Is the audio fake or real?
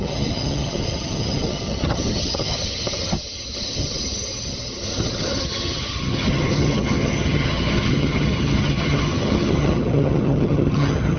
fake